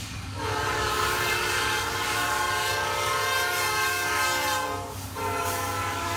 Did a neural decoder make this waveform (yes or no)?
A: yes